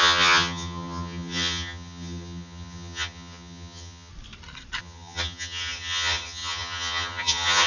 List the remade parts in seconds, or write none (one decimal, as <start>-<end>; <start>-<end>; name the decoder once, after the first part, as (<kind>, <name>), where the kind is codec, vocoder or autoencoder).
0.0-4.1 (vocoder, HiFi-GAN); 4.8-7.7